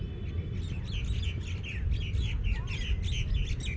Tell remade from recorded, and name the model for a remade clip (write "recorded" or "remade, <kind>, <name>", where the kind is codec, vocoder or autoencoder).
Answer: recorded